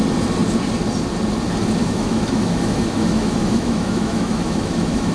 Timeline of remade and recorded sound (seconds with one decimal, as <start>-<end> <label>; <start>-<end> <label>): 0.0-1.8 recorded; 1.8-5.1 remade